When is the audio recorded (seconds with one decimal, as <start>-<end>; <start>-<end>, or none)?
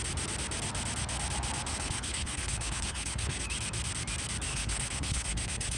0.0-1.7; 3.4-4.5